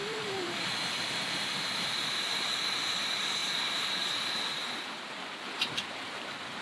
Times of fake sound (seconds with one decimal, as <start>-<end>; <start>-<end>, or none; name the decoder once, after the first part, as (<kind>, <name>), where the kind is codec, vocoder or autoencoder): 0.0-3.4 (vocoder, BigVGAN v2); 5.1-6.6